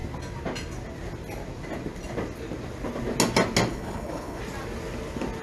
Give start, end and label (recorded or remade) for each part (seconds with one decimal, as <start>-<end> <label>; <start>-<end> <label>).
0.0-3.7 recorded; 3.7-4.4 remade; 4.4-5.4 recorded